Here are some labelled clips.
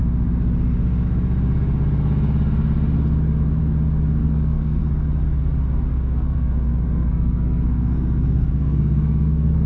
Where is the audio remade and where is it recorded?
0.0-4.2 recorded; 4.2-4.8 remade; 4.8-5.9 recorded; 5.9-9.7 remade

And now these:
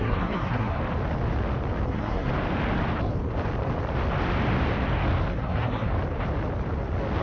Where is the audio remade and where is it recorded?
0.0-0.8 remade; 0.8-1.9 recorded; 1.9-2.3 remade; 2.3-5.3 recorded; 5.3-5.9 remade; 5.9-7.2 recorded

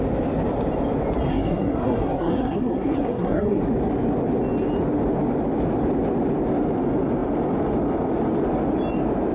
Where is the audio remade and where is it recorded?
0.0-1.3 recorded; 1.3-3.6 remade; 3.6-9.3 recorded

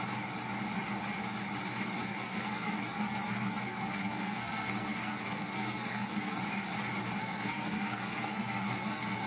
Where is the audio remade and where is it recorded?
0.0-2.0 recorded; 2.0-6.4 remade; 6.4-7.2 recorded; 7.2-9.3 remade

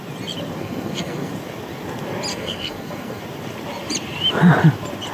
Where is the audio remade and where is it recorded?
0.0-0.6 recorded; 0.6-1.3 remade; 1.3-2.3 recorded; 2.3-3.2 remade; 3.2-5.1 recorded

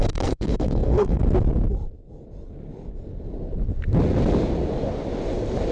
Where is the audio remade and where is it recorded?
0.0-1.2 remade; 1.2-5.7 recorded

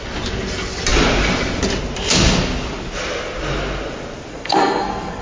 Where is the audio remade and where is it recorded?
0.0-4.3 recorded; 4.3-5.2 remade